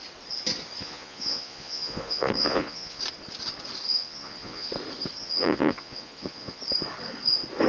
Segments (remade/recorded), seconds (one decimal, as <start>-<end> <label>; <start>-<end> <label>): 0.0-0.8 recorded; 0.8-3.0 remade; 3.0-3.9 recorded; 3.9-4.7 remade; 4.7-5.2 recorded; 5.2-6.6 remade; 6.6-7.7 recorded